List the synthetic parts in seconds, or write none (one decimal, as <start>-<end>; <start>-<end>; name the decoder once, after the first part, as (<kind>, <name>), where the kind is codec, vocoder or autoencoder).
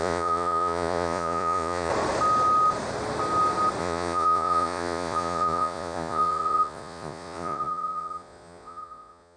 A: 0.0-1.9 (vocoder, Vocos); 3.8-9.4